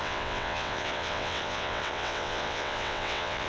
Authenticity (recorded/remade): remade